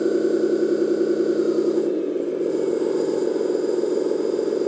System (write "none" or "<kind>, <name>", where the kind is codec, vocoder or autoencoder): none